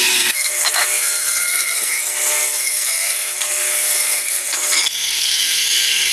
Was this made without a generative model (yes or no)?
no